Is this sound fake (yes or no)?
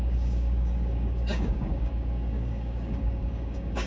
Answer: yes